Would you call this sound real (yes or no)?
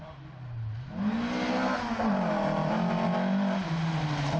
yes